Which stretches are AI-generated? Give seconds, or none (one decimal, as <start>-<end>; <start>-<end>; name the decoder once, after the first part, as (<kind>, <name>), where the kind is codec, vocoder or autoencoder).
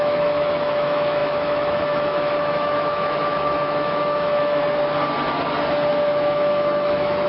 0.0-4.6 (autoencoder, DAC-VAE); 5.9-7.3